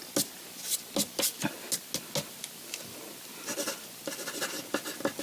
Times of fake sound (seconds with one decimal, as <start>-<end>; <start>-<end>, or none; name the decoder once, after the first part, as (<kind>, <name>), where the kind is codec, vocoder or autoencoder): none